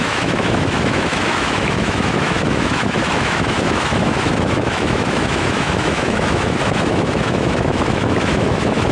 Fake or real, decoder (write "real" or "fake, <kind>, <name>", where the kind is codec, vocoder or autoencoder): fake, autoencoder, DAC-VAE